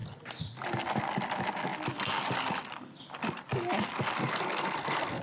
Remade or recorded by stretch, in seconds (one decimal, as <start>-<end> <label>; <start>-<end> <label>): 0.0-4.2 recorded; 4.2-5.2 remade